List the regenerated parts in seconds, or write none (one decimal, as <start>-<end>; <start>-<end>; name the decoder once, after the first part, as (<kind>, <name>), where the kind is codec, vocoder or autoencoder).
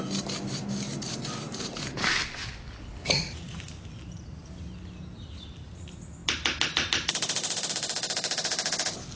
3.0-3.6 (vocoder, Vocos)